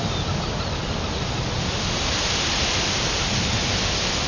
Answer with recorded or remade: recorded